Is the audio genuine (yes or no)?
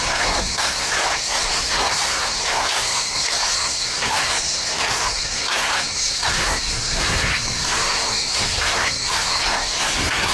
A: no